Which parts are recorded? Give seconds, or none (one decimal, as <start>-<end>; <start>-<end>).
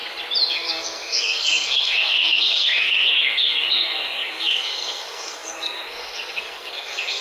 0.0-0.5